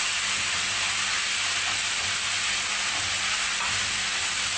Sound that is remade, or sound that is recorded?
recorded